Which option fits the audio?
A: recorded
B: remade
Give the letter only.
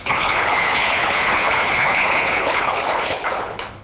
B